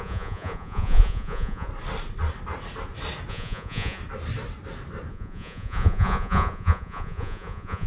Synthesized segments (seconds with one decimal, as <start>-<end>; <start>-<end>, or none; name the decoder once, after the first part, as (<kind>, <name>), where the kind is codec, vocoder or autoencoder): 0.0-1.7 (vocoder, Vocos); 3.3-4.0; 5.1-7.9